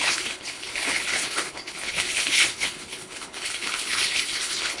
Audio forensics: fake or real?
fake